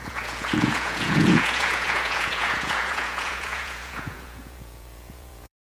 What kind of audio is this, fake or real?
fake